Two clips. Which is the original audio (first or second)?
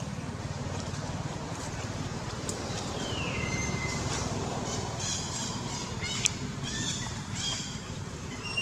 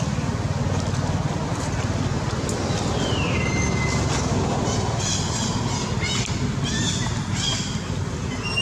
second